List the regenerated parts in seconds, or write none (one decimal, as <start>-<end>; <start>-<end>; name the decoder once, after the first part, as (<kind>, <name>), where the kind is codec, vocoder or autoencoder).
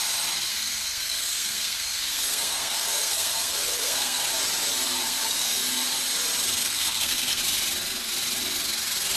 0.5-4.3 (codec, SNAC); 5.0-5.6; 6.6-7.4